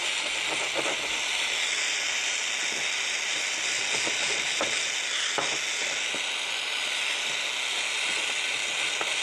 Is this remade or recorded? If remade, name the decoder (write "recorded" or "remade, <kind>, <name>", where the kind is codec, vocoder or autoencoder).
recorded